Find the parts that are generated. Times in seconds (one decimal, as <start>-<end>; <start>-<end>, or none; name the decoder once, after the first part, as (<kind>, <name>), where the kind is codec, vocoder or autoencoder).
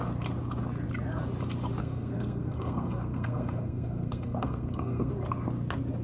1.8-5.1 (codec, SNAC)